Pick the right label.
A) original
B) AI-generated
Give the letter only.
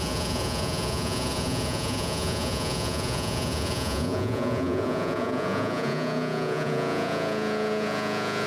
B